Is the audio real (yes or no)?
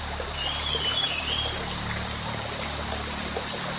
no